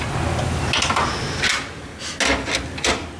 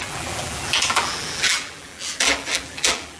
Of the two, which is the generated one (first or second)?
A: second